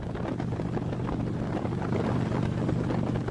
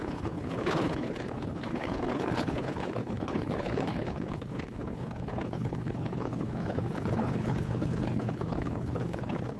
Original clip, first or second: first